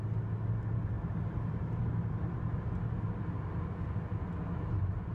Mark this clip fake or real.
real